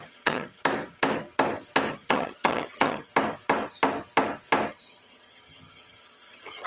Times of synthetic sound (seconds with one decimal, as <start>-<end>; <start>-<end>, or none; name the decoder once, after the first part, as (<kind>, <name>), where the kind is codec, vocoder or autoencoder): 0.0-0.6 (vocoder, HiFi-GAN); 1.9-3.1; 4.7-6.7

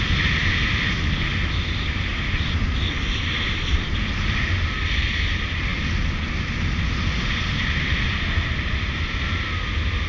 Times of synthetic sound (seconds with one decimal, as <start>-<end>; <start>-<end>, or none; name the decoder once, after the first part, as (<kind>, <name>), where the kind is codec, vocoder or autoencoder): none

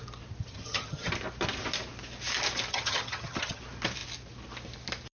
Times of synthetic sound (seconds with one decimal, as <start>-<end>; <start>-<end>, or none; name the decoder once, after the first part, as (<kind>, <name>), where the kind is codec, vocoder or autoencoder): 0.5-1.1 (vocoder, HiFi-GAN); 2.7-3.6

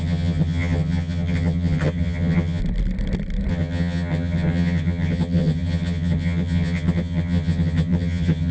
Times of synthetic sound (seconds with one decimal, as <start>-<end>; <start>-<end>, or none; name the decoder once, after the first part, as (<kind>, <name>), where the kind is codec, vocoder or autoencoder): 0.0-2.6 (vocoder, HiFi-GAN); 3.5-8.5

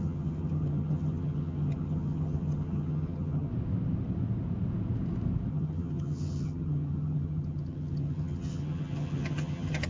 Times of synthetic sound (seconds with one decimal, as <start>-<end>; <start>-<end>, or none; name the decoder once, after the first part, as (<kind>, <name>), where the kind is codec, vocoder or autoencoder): 0.0-3.5 (vocoder, HiFi-GAN); 5.5-9.9

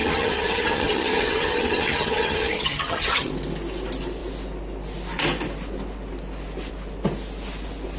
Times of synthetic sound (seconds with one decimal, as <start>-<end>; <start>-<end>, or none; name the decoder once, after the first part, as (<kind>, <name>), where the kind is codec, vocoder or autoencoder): 0.0-3.3 (vocoder, HiFi-GAN)